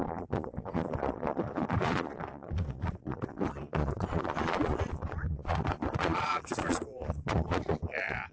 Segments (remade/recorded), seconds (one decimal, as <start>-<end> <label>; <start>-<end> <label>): 0.0-8.3 remade